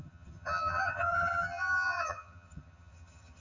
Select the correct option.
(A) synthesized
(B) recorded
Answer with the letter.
A